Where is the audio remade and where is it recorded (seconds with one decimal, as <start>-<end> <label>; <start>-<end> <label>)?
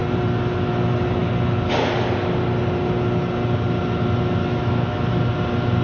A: 0.0-4.4 recorded; 4.4-5.2 remade; 5.2-5.8 recorded